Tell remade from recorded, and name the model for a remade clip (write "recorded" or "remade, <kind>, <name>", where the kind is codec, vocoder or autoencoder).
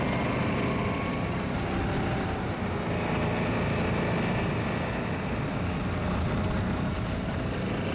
recorded